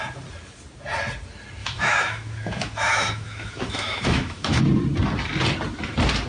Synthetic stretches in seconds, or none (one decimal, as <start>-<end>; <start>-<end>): 1.6-4.6